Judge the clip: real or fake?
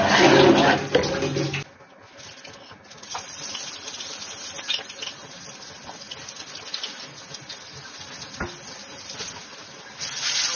real